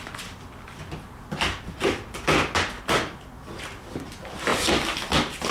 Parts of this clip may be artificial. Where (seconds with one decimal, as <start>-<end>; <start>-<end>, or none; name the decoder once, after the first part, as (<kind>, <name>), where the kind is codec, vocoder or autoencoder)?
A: none